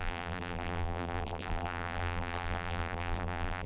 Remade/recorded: remade